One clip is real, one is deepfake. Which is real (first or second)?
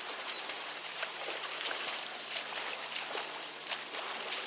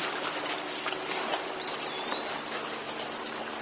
second